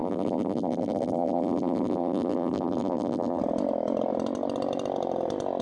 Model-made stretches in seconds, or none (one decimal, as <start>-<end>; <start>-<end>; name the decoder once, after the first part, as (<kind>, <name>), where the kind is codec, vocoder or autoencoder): 0.0-3.4 (vocoder, BigVGAN v2)